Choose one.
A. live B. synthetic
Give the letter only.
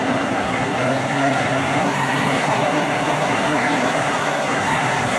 B